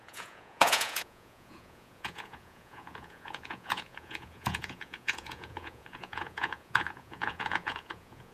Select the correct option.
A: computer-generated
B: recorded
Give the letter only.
A